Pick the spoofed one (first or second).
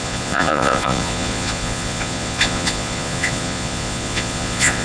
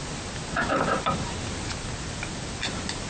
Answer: first